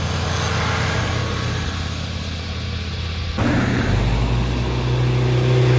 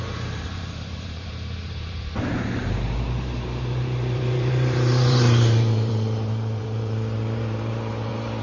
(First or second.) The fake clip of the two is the second